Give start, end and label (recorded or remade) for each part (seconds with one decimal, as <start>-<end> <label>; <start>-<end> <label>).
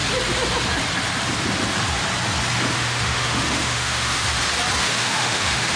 0.0-2.7 recorded; 2.7-4.3 remade; 4.3-4.8 recorded; 4.8-5.8 remade